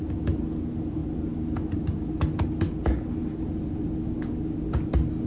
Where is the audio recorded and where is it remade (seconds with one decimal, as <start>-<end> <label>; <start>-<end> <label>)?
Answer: 0.0-5.3 recorded